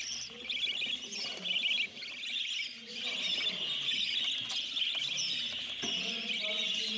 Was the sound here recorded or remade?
recorded